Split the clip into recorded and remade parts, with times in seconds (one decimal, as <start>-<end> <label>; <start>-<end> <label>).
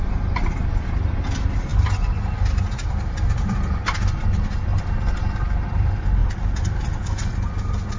0.0-8.0 recorded